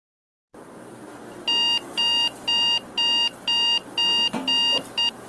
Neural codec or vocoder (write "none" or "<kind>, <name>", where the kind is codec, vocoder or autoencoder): none